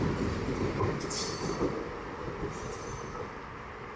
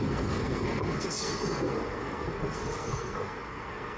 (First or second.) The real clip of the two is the first